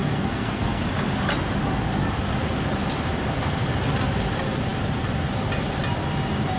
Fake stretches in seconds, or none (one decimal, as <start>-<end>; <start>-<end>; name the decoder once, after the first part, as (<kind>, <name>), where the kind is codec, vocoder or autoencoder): 0.0-0.8 (codec, SNAC)